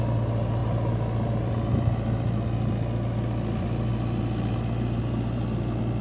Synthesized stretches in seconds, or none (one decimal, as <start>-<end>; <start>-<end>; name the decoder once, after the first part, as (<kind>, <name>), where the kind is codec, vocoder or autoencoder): none